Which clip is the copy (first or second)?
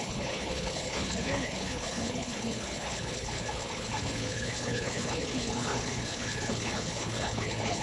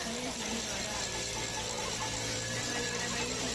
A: first